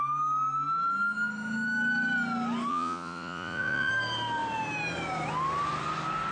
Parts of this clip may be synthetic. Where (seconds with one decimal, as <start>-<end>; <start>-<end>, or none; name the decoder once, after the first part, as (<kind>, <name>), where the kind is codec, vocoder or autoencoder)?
2.7-3.9 (vocoder, Vocos)